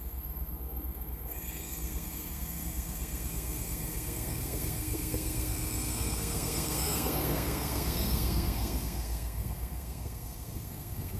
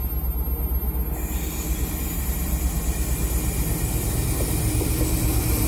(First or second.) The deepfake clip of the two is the first